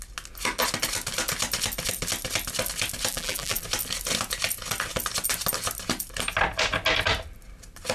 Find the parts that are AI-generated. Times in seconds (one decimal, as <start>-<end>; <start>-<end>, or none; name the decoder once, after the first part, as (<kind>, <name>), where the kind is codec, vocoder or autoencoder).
3.1-3.6 (vocoder, BigVGAN v2)